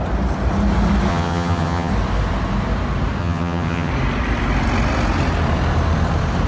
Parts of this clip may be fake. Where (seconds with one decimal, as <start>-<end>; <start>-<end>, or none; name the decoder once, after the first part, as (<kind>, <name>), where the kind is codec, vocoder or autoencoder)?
1.1-1.9 (vocoder, HiFi-GAN); 3.2-3.9